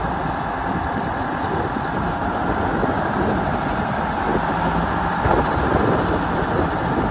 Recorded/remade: recorded